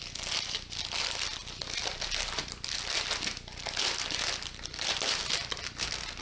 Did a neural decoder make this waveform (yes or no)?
no